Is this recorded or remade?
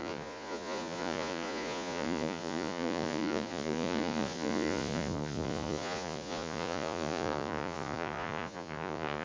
remade